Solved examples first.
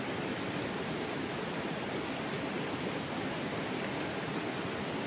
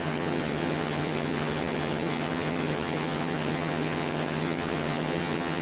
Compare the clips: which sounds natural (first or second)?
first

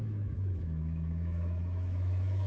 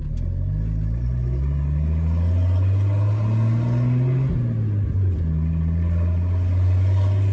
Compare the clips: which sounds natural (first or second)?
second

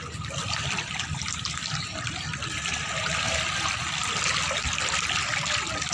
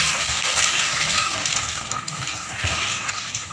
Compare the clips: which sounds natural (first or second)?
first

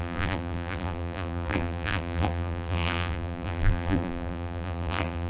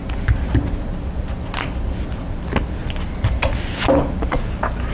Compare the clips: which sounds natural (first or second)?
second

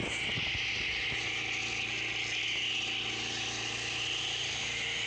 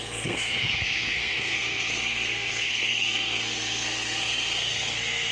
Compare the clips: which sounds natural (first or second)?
first